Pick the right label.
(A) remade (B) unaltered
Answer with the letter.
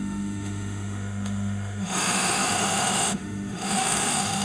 A